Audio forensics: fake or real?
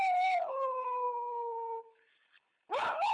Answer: fake